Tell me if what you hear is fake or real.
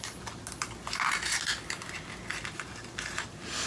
real